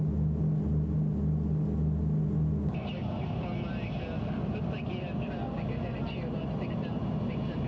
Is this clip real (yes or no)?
yes